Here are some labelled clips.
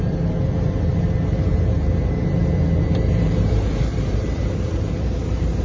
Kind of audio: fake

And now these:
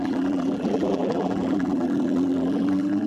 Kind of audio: fake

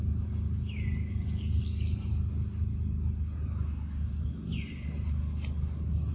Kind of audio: real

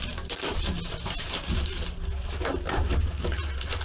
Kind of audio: fake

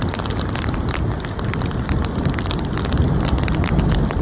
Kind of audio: real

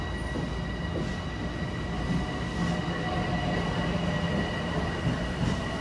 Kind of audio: real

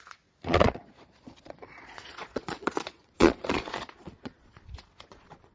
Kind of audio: fake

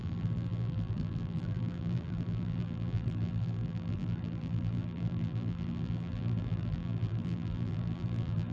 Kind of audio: fake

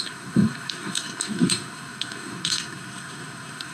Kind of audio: fake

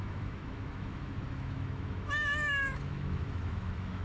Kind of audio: fake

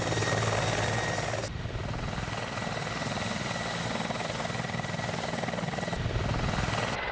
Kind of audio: real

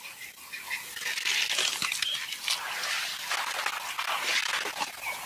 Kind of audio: real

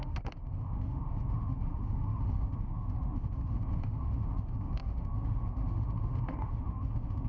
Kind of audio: fake